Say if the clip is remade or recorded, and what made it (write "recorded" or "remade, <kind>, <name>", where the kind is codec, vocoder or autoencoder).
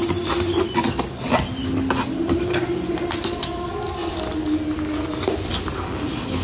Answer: recorded